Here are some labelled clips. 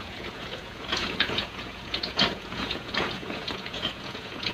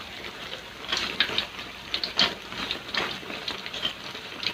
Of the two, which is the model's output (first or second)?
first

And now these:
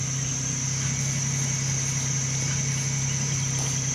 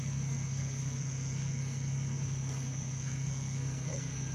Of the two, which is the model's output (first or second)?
second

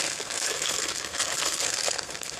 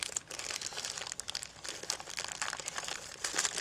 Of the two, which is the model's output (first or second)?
first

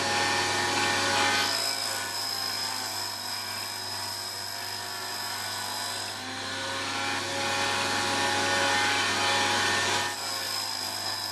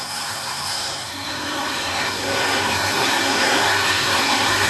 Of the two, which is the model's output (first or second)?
second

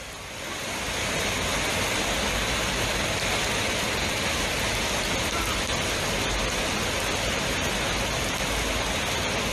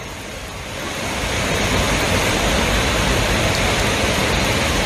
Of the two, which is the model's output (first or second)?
second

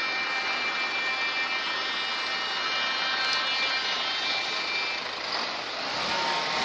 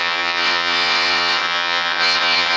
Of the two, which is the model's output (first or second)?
second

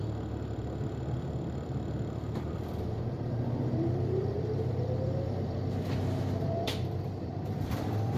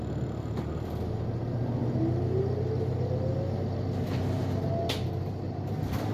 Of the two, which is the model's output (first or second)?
first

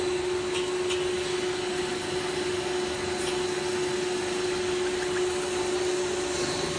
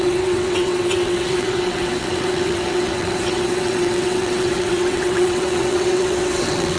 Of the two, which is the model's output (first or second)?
second